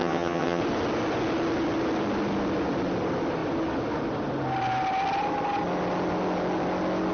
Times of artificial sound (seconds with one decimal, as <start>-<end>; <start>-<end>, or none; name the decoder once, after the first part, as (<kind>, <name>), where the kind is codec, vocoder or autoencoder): 0.0-0.6 (vocoder, HiFi-GAN)